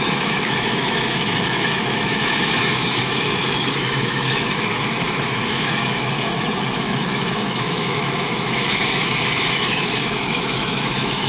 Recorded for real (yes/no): no